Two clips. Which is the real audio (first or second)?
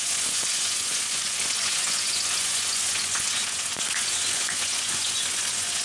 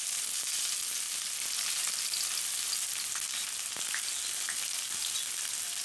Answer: second